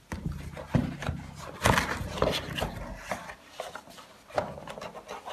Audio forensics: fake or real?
real